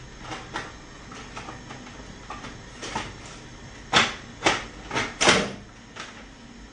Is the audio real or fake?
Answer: real